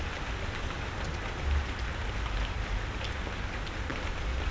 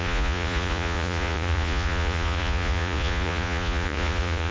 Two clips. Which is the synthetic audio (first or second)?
second